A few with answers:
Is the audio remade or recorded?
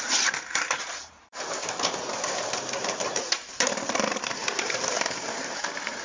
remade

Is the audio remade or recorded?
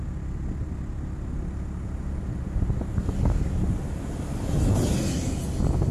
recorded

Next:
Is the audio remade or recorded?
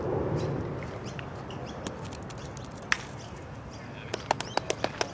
recorded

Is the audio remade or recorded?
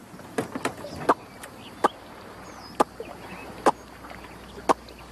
recorded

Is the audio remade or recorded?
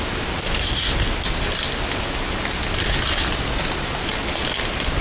recorded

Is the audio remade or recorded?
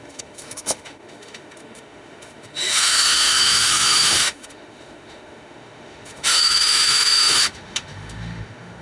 remade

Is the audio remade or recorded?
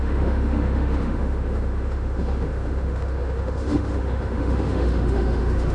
remade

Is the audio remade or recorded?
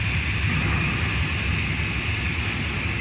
recorded